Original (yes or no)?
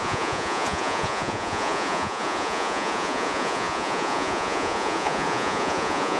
no